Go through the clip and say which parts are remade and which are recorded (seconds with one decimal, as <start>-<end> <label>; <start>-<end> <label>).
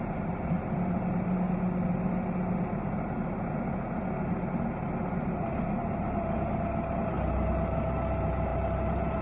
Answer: 0.0-9.2 recorded